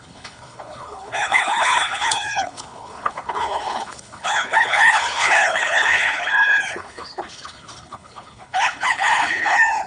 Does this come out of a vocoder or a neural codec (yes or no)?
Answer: yes